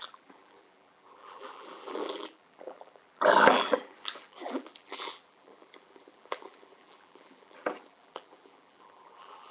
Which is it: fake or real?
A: fake